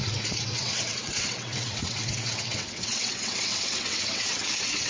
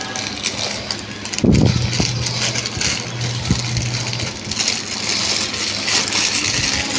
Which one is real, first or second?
second